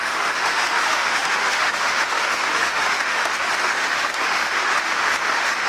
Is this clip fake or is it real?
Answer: fake